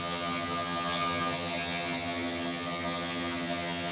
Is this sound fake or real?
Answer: fake